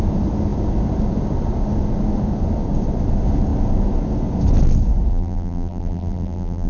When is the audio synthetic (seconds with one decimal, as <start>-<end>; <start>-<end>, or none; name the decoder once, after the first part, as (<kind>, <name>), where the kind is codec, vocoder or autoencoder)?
5.1-6.7 (vocoder, BigVGAN v2)